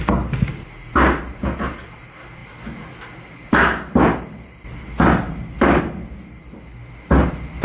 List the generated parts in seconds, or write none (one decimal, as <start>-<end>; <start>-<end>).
none